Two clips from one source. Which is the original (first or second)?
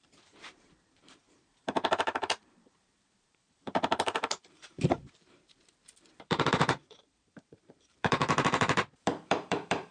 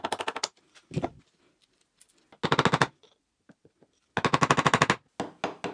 second